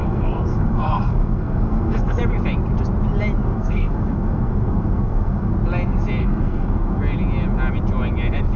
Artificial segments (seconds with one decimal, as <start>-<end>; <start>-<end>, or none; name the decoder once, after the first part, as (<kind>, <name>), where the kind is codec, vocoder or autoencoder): 0.0-2.2 (codec, SNAC); 3.4-5.5; 6.2-7.0